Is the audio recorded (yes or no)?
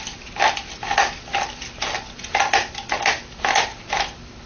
yes